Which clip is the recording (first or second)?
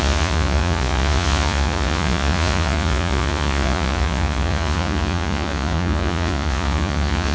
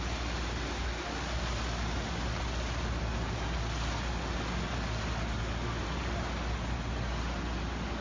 second